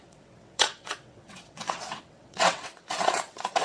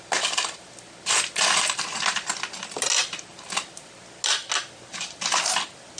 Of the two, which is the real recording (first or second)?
second